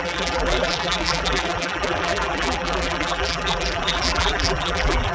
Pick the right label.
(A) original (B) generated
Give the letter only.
B